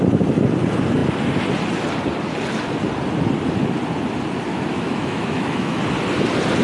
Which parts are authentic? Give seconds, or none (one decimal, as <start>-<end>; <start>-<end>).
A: 0.0-4.5; 5.8-6.6